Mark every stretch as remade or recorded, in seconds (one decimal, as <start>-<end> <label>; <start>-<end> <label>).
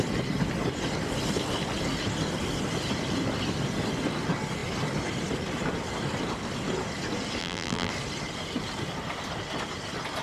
0.0-7.4 recorded; 7.4-7.9 remade; 7.9-10.2 recorded